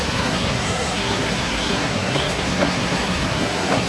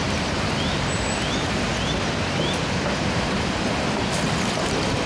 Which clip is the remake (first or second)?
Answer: first